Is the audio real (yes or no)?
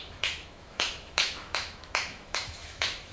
no